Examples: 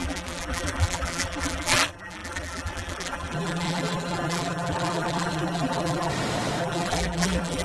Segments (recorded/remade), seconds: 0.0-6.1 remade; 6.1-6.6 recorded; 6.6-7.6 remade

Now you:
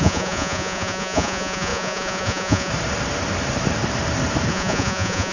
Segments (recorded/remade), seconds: 0.0-2.7 remade; 2.7-4.5 recorded; 4.5-5.3 remade